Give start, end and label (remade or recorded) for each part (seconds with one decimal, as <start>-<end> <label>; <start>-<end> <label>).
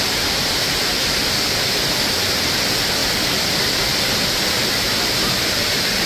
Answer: 0.0-6.1 recorded